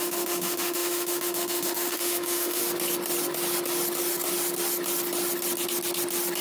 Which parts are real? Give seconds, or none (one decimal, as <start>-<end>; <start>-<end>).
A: 2.6-6.4

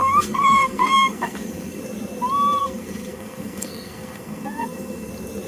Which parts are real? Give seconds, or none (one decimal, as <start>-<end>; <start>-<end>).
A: 1.8-2.6; 5.1-5.5

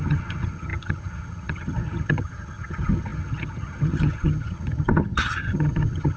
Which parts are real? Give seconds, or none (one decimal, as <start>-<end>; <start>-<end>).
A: none

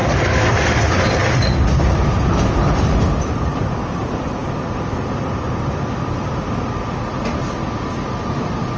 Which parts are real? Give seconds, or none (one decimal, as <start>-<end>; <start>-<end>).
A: 0.0-8.8

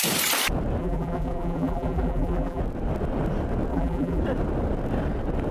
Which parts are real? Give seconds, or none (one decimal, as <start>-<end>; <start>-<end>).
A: 0.0-0.8; 2.6-3.7; 4.2-5.5

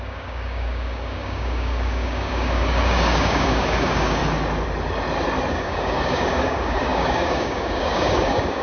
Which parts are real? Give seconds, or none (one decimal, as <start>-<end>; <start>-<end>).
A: 4.2-5.5

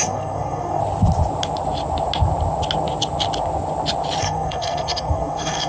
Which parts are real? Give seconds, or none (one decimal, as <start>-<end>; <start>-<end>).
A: 0.8-4.2

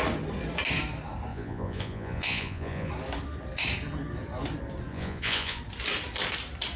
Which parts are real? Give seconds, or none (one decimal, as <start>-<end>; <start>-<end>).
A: 0.0-1.3; 2.9-4.9; 5.6-6.8